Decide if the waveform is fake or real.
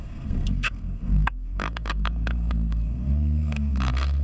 fake